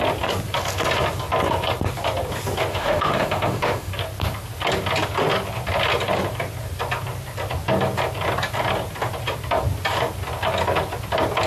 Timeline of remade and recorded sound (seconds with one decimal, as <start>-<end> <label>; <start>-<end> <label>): 0.0-2.7 recorded; 2.7-3.9 remade; 3.9-11.5 recorded